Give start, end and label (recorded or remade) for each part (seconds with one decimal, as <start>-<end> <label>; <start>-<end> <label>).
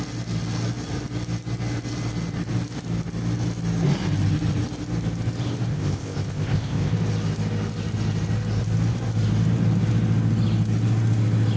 0.0-5.7 recorded; 5.7-6.9 remade; 6.9-11.6 recorded